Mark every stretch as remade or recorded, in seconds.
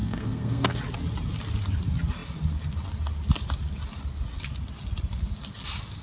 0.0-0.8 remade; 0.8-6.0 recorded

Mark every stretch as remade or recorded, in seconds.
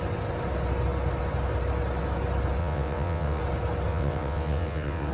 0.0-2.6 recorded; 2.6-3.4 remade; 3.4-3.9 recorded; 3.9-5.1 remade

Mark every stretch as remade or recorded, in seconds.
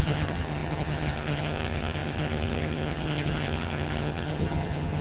0.0-5.0 remade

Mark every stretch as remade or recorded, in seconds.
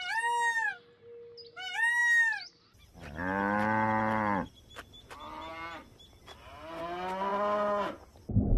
0.0-8.6 recorded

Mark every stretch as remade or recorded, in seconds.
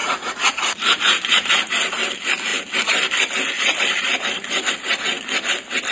0.0-1.5 remade; 1.5-5.9 recorded